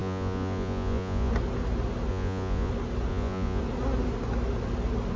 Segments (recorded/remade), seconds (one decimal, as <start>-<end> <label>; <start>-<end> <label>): 0.0-1.3 remade; 1.3-2.1 recorded; 2.1-2.7 remade; 2.7-3.1 recorded; 3.1-3.6 remade; 3.6-5.2 recorded